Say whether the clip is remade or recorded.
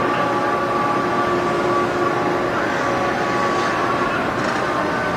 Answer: recorded